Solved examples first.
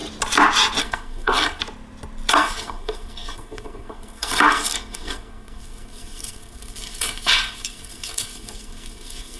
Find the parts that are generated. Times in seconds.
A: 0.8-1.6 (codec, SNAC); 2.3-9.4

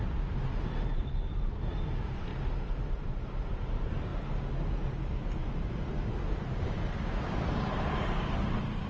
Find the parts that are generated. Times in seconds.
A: 0.0-2.3 (vocoder, BigVGAN v2); 3.5-4.1; 5.7-8.9

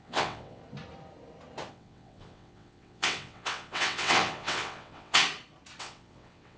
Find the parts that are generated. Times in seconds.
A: 0.0-0.6 (vocoder, WaveNeXt); 1.7-5.2; 5.8-6.6